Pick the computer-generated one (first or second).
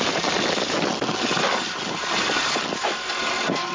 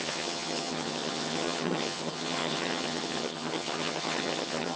second